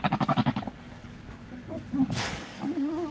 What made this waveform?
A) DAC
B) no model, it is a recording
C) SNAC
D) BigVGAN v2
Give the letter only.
A